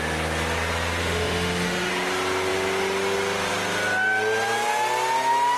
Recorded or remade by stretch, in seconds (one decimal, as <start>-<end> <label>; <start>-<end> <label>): 0.0-1.0 recorded; 1.0-1.9 remade; 1.9-5.6 recorded